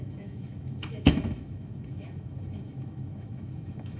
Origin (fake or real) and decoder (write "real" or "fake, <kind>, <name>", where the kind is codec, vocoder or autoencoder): fake, autoencoder, DAC-VAE